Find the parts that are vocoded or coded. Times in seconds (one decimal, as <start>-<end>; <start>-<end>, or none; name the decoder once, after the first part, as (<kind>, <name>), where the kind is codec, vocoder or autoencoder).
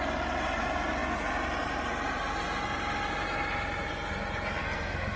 4.6-5.2 (codec, SNAC)